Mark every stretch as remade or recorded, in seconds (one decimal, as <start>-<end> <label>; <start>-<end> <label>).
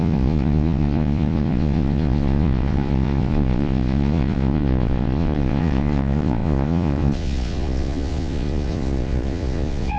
0.0-10.0 remade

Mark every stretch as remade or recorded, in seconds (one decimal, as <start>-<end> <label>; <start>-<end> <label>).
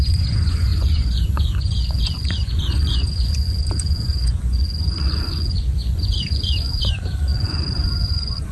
0.0-8.5 remade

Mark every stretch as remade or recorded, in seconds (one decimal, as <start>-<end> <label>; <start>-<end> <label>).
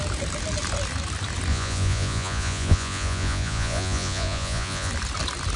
0.0-1.5 recorded; 1.5-4.9 remade; 4.9-5.6 recorded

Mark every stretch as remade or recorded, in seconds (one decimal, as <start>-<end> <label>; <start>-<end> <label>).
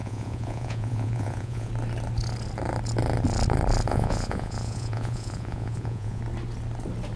0.0-1.7 remade; 1.7-3.9 recorded; 3.9-6.2 remade; 6.2-7.2 recorded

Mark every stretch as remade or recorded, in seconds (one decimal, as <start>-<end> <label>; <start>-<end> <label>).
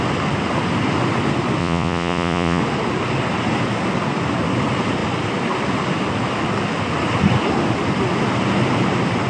0.0-1.6 recorded; 1.6-2.6 remade; 2.6-9.3 recorded